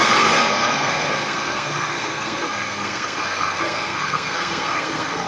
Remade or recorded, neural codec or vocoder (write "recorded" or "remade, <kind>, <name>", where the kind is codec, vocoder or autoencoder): remade, codec, SNAC